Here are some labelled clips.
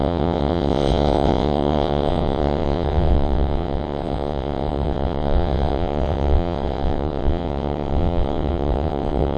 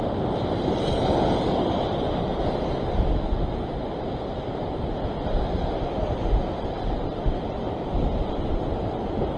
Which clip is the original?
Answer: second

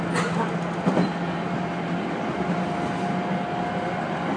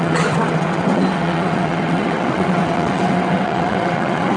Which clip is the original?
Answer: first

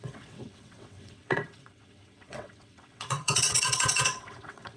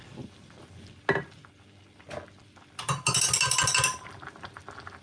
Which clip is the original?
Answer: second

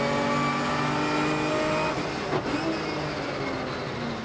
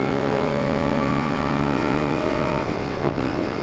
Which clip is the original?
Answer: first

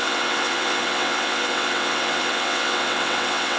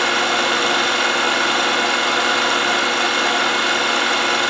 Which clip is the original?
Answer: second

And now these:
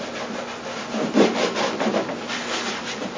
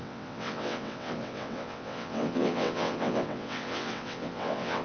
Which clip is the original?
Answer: first